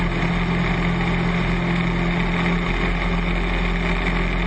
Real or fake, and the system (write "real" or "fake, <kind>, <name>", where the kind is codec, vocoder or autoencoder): real